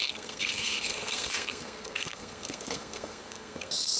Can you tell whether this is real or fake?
fake